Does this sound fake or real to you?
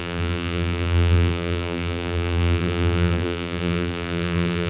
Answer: fake